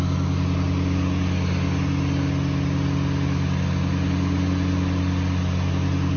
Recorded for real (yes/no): yes